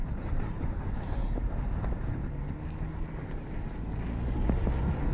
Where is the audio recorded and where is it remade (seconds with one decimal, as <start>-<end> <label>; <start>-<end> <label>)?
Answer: 0.0-0.6 recorded; 0.6-1.2 remade; 1.2-4.3 recorded; 4.3-5.1 remade